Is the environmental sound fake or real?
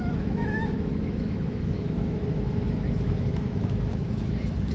fake